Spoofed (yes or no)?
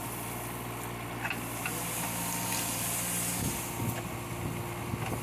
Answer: no